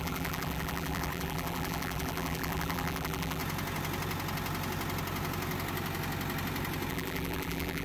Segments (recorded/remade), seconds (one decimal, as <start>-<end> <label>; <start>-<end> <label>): 0.0-3.4 remade; 3.4-6.9 recorded; 6.9-7.8 remade